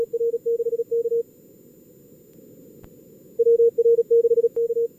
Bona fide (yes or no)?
yes